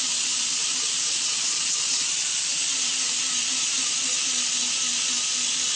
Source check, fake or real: real